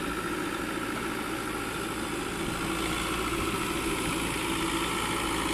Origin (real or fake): real